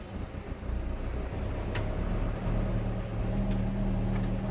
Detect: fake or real real